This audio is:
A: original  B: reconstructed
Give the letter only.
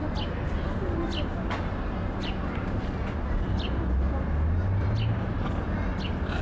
A